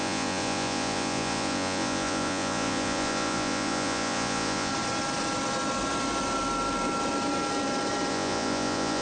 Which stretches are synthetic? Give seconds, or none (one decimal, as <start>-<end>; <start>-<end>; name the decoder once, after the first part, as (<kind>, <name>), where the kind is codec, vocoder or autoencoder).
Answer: 0.0-4.7 (vocoder, Vocos); 8.1-9.0

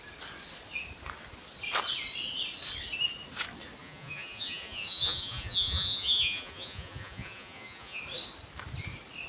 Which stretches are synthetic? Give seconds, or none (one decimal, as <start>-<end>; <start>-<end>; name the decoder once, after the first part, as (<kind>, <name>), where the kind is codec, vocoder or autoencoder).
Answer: 3.8-8.0 (vocoder, Vocos)

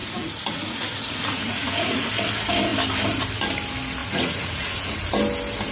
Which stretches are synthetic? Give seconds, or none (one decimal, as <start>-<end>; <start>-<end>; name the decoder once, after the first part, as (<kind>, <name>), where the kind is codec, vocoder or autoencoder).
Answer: 0.0-2.1 (vocoder, Vocos); 4.0-5.1

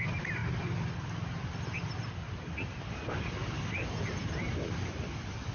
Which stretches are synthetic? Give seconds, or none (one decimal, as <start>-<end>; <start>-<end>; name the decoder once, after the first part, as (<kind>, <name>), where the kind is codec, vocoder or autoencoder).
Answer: none

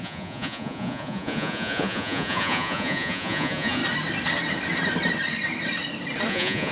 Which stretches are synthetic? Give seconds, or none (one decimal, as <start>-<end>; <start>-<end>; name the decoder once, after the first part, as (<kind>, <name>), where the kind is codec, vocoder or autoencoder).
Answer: 0.0-3.8 (vocoder, Vocos); 6.3-6.7

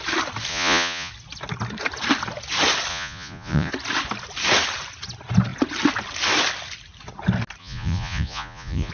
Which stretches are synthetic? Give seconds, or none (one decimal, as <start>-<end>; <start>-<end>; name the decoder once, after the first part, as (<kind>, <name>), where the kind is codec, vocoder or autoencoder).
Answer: 0.5-1.1 (vocoder, Vocos); 2.9-3.7; 7.6-8.9

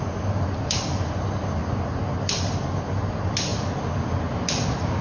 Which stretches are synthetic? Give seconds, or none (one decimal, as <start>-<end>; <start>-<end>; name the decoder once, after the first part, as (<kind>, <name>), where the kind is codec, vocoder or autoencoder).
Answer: none